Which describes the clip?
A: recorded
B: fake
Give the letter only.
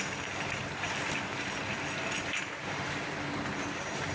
A